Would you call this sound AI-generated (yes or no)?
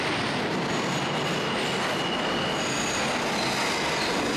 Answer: no